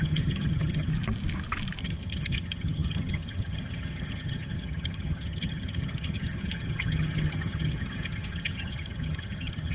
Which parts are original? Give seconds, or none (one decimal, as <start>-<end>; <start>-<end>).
0.9-1.8